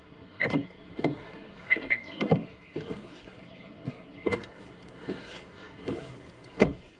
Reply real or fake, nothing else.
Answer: fake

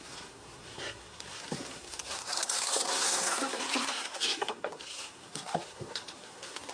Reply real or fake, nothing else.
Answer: fake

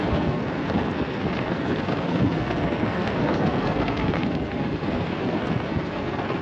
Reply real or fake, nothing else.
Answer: fake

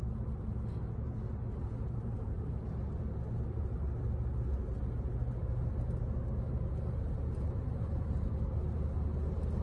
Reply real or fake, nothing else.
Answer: real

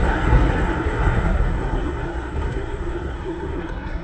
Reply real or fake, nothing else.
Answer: fake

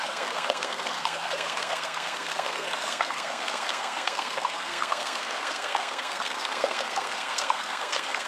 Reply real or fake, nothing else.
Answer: fake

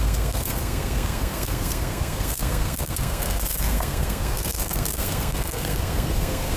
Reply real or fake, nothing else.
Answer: fake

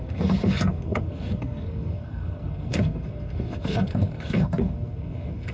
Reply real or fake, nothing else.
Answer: fake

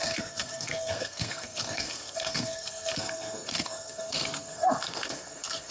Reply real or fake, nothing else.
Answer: fake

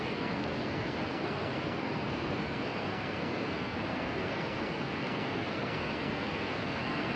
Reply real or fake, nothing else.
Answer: fake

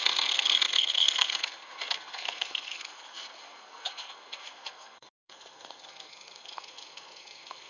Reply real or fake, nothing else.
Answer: fake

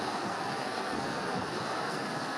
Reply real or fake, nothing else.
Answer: fake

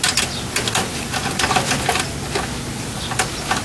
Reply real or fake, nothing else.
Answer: real